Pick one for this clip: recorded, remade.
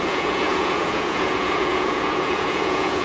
remade